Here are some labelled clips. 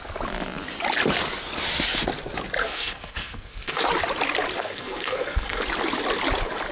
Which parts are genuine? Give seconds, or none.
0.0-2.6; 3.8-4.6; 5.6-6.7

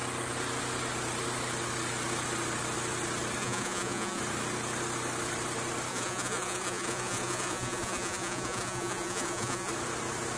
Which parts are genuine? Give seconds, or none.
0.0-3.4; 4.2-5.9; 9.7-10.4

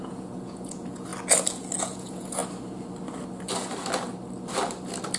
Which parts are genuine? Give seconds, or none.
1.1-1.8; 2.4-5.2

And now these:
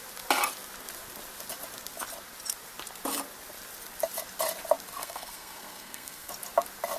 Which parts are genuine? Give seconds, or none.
0.0-5.0; 6.3-7.0